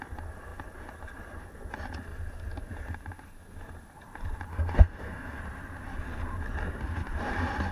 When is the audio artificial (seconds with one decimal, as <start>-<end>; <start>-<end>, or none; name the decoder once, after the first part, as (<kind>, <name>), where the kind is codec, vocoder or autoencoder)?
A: 4.5-5.4 (codec, SNAC)